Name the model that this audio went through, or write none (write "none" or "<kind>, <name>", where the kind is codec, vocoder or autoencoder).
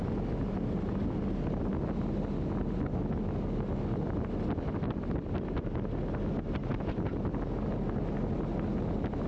none